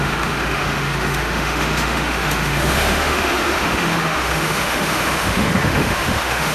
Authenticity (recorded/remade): remade